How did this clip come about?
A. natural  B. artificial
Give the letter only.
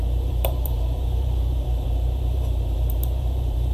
B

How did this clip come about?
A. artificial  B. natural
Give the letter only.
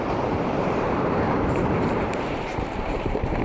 A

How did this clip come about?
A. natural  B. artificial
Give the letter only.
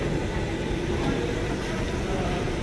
A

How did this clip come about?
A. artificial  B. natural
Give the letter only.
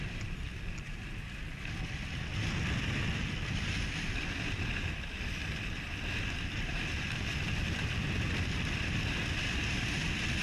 A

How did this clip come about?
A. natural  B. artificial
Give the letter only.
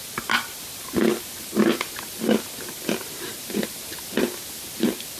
A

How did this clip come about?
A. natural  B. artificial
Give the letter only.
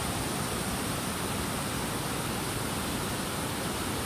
A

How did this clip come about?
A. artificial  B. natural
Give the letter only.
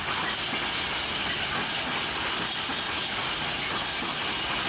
B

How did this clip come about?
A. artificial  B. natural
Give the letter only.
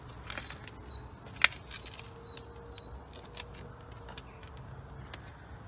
B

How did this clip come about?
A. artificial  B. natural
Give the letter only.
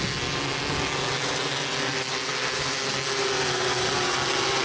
B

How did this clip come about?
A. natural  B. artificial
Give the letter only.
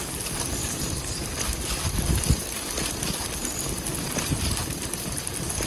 A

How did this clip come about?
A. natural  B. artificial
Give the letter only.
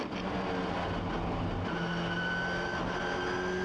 A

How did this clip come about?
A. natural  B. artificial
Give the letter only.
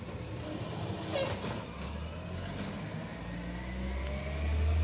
A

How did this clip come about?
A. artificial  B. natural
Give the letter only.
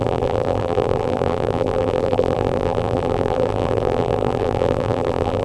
A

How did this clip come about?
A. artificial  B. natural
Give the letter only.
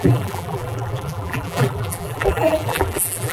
A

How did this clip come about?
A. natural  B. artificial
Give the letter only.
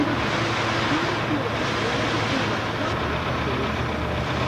A